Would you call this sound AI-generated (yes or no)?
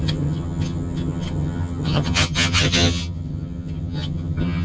yes